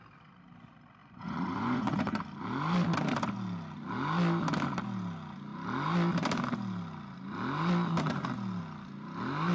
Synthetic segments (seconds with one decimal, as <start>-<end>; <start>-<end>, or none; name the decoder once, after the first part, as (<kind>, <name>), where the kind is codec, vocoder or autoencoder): 1.0-2.2 (vocoder, Vocos)